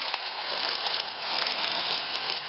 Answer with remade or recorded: remade